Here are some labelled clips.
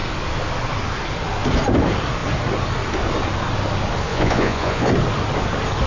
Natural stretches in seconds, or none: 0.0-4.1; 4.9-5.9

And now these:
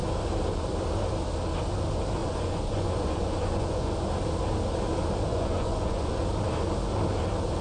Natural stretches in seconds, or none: 0.0-2.2; 4.1-5.3; 6.2-7.6

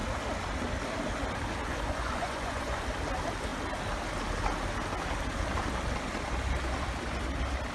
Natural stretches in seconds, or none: 0.0-1.6; 2.8-7.7